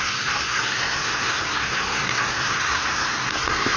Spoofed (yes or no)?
yes